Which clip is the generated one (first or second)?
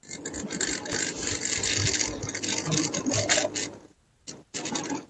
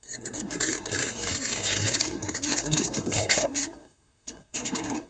second